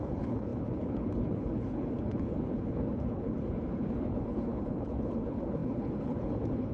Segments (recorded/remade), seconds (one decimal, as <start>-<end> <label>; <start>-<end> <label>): 0.0-6.7 remade